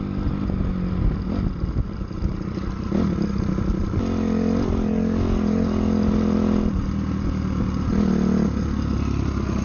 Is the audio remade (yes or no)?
no